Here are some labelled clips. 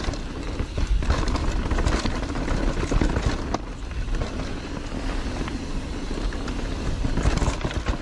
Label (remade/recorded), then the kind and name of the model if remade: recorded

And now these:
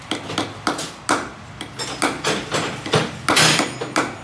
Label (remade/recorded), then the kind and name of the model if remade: recorded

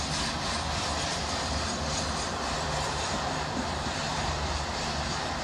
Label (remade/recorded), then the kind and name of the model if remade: remade, vocoder, BigVGAN v2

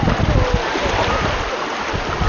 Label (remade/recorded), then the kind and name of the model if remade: recorded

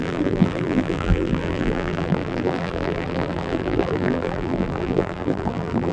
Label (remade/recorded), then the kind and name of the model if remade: remade, vocoder, BigVGAN v2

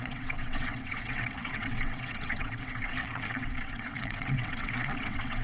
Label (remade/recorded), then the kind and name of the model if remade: remade, vocoder, WaveNeXt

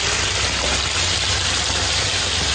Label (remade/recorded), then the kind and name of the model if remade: recorded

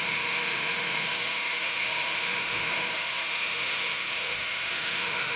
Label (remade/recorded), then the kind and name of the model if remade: remade, autoencoder, DAC-VAE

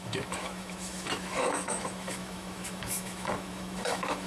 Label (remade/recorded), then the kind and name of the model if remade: remade, autoencoder, DAC-VAE